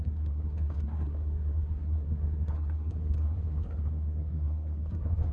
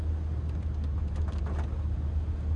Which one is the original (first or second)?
second